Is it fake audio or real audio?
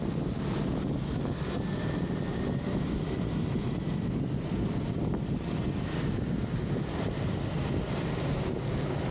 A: real